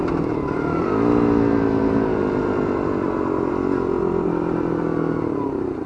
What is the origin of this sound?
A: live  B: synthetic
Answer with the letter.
A